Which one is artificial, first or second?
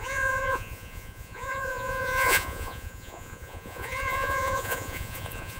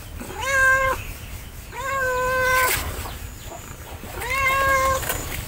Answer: first